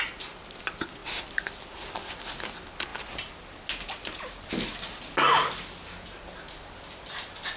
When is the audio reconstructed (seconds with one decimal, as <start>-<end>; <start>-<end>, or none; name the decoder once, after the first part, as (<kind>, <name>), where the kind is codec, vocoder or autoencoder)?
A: none